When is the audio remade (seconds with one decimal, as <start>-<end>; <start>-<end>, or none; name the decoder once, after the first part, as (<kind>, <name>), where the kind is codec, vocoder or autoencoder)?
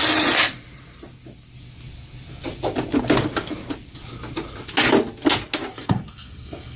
5.7-6.8 (codec, SNAC)